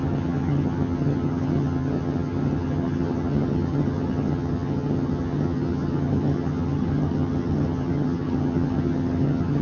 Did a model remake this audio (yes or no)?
yes